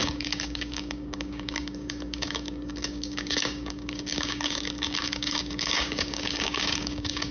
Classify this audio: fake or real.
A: fake